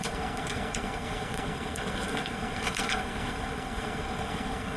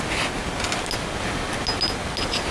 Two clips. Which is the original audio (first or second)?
second